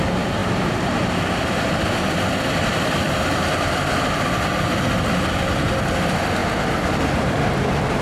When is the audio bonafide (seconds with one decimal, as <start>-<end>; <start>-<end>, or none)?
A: 0.0-0.4; 5.2-8.0